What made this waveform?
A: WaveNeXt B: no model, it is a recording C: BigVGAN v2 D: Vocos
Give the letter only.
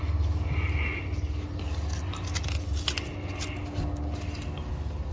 B